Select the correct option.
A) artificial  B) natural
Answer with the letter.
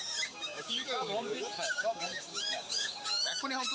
A